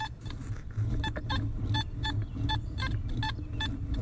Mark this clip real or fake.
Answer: real